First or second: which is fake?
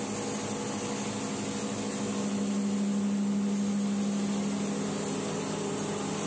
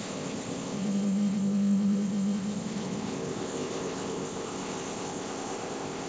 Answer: second